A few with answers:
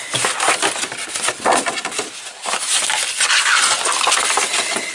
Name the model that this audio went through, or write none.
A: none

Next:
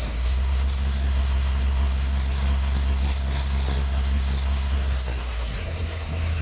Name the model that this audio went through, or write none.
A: codec, SNAC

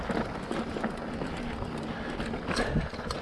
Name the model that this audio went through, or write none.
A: none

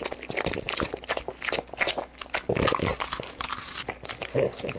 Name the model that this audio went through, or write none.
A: none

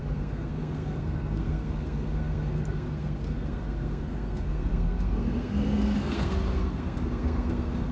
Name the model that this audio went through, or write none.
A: codec, SNAC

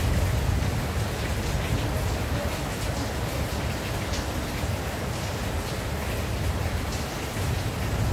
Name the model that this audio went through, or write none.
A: none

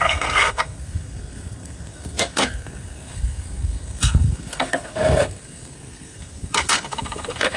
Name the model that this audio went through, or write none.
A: codec, SNAC